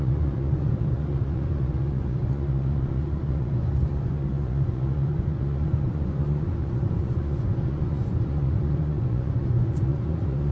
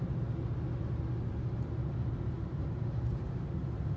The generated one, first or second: first